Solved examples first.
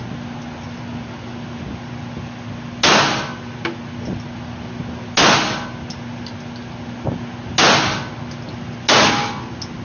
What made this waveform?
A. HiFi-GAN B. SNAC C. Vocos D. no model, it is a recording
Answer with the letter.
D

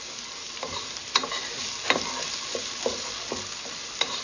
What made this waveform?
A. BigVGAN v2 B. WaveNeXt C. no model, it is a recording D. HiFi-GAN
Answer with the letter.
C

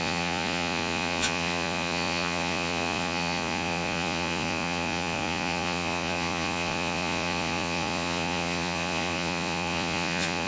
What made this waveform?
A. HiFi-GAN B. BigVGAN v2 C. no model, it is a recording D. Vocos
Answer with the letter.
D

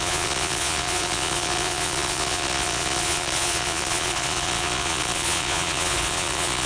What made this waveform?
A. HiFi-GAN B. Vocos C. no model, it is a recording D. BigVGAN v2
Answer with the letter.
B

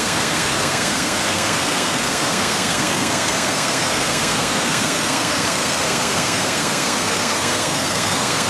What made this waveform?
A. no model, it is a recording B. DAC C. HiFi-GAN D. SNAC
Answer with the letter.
D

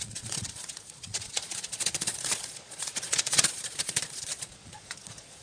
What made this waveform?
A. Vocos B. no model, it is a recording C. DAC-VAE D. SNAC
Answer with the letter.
A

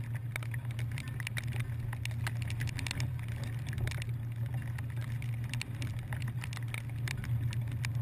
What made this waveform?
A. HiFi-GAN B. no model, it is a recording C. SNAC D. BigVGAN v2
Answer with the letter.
B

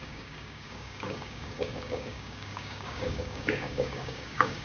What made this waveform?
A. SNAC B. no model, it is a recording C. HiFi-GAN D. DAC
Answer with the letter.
D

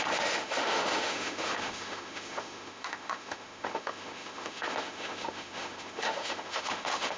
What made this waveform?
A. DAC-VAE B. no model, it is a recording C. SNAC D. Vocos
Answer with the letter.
A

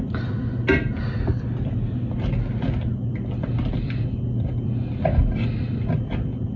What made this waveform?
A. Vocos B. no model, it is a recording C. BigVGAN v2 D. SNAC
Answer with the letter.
B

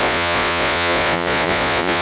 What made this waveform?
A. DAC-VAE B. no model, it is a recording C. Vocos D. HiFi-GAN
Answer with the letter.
C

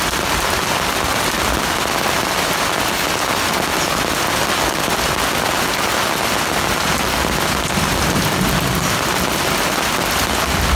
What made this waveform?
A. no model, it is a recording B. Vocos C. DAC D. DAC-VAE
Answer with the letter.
A